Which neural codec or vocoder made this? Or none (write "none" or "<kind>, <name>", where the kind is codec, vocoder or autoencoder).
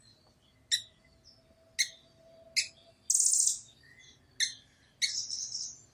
none